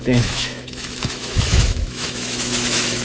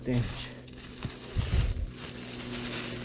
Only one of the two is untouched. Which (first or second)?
second